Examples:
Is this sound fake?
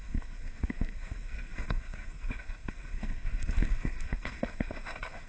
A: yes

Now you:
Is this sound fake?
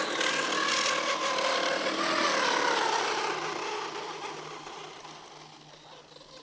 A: no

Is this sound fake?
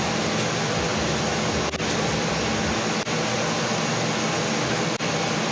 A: no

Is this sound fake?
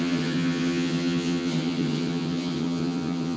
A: yes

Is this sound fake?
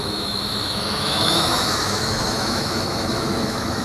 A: yes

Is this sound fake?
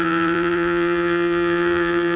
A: yes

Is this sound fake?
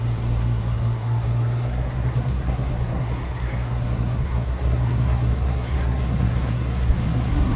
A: yes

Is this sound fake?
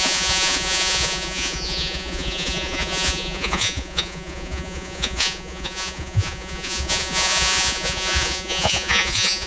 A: yes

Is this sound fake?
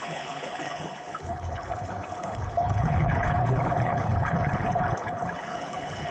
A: yes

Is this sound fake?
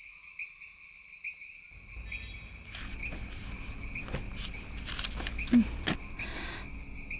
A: no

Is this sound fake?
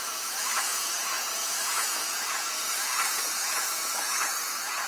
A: yes